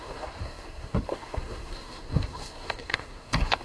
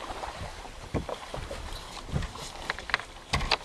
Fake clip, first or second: first